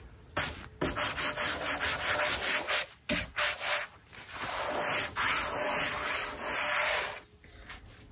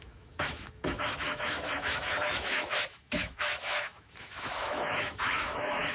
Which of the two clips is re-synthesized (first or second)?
second